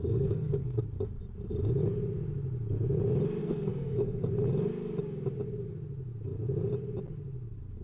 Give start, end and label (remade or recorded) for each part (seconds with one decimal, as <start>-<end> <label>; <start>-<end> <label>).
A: 0.0-0.8 remade; 0.8-3.4 recorded; 3.4-4.3 remade; 4.3-7.8 recorded